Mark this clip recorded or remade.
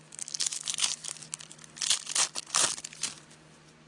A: recorded